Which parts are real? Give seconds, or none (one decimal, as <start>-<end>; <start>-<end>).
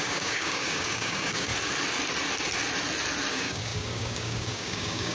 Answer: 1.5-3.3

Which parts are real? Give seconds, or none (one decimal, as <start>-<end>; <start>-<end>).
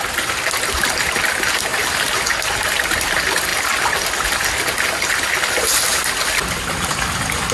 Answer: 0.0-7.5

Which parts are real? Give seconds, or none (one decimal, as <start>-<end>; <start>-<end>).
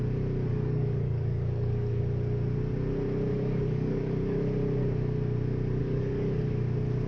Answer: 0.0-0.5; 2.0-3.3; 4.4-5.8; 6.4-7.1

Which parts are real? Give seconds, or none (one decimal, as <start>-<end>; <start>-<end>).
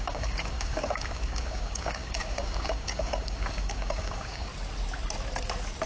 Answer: 4.5-5.9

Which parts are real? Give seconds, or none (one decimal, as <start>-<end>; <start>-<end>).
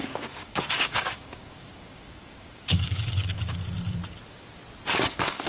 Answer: 3.6-4.9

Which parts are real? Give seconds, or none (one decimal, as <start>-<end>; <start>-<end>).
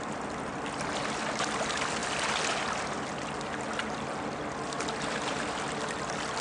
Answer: 0.0-6.4